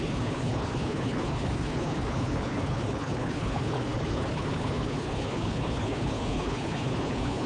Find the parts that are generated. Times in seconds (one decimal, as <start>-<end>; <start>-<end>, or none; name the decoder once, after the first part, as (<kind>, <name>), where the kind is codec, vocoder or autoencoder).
0.0-7.5 (codec, HILCodec)